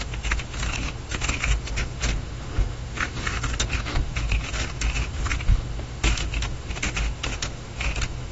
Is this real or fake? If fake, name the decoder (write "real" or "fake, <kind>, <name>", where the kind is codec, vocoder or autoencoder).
fake, autoencoder, DAC-VAE